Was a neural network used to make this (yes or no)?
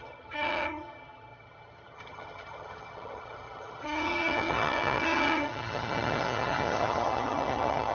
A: yes